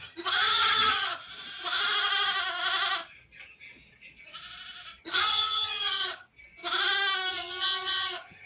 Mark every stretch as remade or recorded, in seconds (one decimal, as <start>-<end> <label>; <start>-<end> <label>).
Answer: 0.0-1.2 remade; 1.2-5.0 recorded; 5.0-6.3 remade; 6.3-7.3 recorded; 7.3-8.5 remade